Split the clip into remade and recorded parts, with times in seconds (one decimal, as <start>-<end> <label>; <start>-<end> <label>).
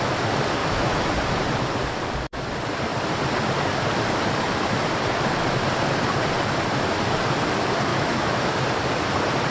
0.0-0.6 recorded; 0.6-1.1 remade; 1.1-7.9 recorded; 7.9-8.6 remade; 8.6-9.5 recorded